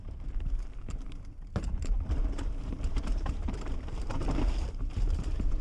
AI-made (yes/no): yes